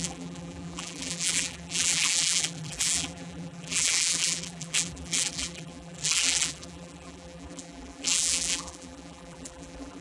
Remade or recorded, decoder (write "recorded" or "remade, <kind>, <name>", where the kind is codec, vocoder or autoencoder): remade, vocoder, BigVGAN v2